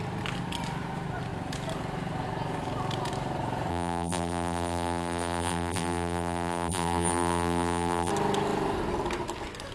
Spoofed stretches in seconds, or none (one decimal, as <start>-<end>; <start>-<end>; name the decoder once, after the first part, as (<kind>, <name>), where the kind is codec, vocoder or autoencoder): 3.7-8.1 (vocoder, BigVGAN v2)